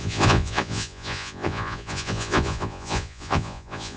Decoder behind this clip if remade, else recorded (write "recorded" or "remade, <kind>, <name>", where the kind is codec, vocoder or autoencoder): remade, vocoder, Vocos